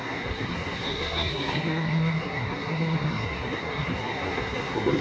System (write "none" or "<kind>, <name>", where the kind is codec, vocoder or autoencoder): codec, SNAC